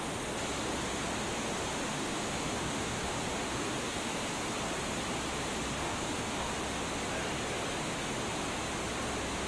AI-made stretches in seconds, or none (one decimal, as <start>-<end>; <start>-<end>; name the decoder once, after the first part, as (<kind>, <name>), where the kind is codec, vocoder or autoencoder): 1.9-3.1 (autoencoder, DAC-VAE); 3.5-4.1; 5.8-6.5

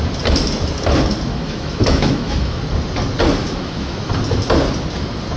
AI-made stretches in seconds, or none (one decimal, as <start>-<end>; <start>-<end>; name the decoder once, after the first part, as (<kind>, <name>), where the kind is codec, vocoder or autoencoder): 1.3-2.6 (autoencoder, DAC-VAE); 3.4-4.1

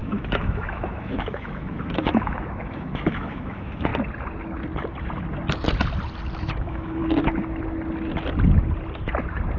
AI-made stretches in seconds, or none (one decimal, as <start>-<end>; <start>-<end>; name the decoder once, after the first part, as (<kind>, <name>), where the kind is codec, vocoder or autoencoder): 0.0-3.9 (autoencoder, DAC-VAE); 6.6-7.0

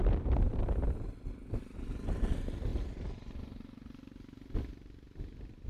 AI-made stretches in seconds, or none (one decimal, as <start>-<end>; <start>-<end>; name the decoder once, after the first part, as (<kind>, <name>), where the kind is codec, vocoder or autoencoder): none